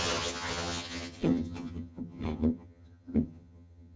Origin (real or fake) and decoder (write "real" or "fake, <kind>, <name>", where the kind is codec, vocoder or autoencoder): fake, vocoder, HiFi-GAN